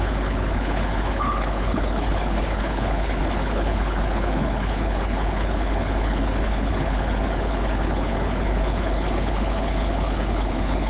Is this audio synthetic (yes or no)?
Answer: yes